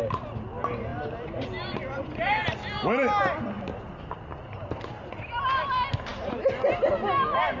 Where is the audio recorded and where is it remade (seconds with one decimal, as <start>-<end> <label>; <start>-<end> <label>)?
0.0-7.6 recorded